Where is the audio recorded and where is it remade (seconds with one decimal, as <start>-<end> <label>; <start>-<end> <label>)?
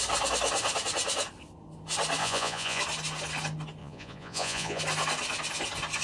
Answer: 0.0-2.2 recorded; 2.2-2.8 remade; 2.8-3.8 recorded; 3.8-4.8 remade; 4.8-6.0 recorded